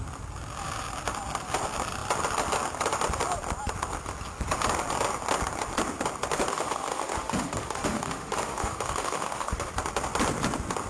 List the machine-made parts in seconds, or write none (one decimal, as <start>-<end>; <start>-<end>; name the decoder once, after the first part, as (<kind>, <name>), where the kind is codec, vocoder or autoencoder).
6.5-9.7 (autoencoder, DAC-VAE)